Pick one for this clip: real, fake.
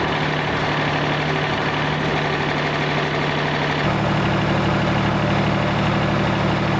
real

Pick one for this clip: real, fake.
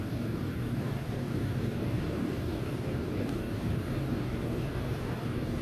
fake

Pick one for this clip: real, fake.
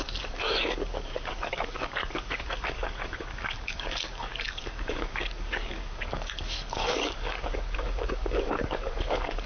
fake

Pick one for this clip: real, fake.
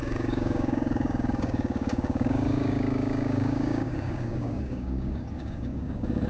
fake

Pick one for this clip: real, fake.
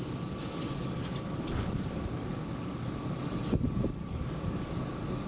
fake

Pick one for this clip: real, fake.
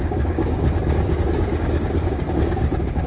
fake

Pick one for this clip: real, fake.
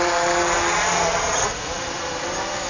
real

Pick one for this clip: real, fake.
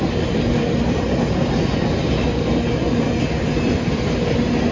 real